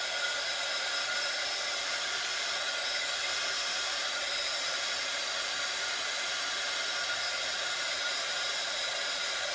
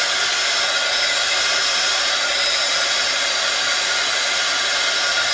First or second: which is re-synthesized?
first